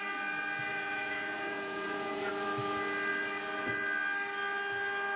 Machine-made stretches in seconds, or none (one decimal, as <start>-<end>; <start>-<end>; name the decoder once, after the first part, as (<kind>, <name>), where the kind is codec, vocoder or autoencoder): 0.7-2.3 (vocoder, Vocos)

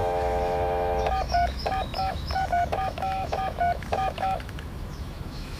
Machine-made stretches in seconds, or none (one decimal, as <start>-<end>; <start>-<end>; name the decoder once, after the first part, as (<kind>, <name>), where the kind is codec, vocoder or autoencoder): 0.0-5.6 (autoencoder, DAC-VAE)

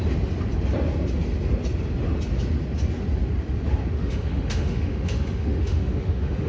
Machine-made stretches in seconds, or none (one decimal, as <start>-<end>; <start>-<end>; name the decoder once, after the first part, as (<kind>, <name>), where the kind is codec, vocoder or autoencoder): 3.9-6.5 (autoencoder, DAC-VAE)

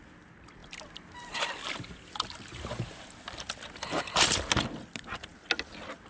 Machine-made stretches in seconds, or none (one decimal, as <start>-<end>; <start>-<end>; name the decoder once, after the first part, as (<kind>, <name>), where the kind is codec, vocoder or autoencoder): none

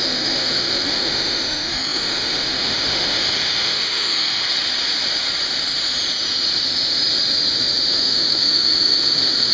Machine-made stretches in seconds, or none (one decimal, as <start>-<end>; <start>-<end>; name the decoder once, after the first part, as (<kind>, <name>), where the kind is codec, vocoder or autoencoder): 0.0-4.4 (autoencoder, DAC-VAE); 7.9-9.5

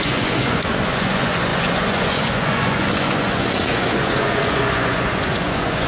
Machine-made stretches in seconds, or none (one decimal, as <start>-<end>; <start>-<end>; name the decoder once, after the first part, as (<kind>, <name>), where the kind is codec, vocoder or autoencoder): 0.0-5.9 (vocoder, Vocos)